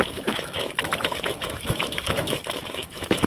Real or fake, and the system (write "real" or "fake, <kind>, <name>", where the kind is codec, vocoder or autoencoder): fake, autoencoder, DAC-VAE